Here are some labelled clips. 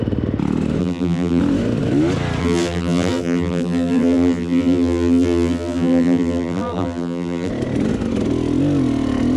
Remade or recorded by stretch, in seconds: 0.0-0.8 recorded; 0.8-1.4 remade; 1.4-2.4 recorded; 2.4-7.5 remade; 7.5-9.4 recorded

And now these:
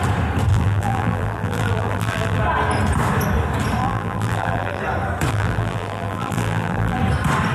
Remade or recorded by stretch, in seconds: 0.0-0.5 recorded; 0.5-2.4 remade; 2.4-3.8 recorded; 3.8-4.8 remade; 4.8-5.3 recorded; 5.3-7.0 remade; 7.0-7.5 recorded

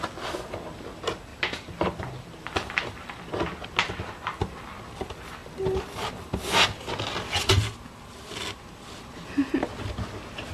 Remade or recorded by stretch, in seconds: 0.0-1.3 recorded; 1.3-3.3 remade; 3.3-5.4 recorded; 5.4-6.1 remade; 6.1-8.4 recorded; 8.4-9.1 remade; 9.1-10.5 recorded

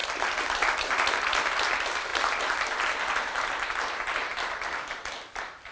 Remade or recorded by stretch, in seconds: 0.0-2.1 remade; 2.1-3.5 recorded; 3.5-5.7 remade

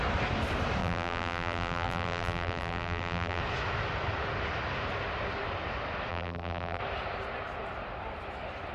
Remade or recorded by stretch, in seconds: 0.0-0.8 recorded; 0.8-3.4 remade; 3.4-6.1 recorded; 6.1-6.8 remade; 6.8-8.7 recorded

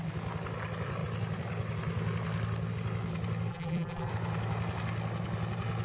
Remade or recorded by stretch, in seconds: 0.0-3.5 recorded; 3.5-4.1 remade; 4.1-5.8 recorded

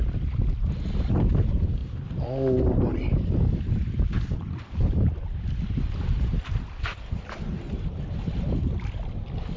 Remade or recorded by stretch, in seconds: 0.0-9.6 recorded

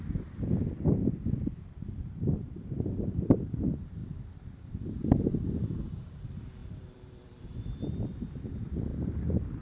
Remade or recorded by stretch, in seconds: 0.0-4.0 remade; 4.0-6.1 recorded; 6.1-8.9 remade; 8.9-9.6 recorded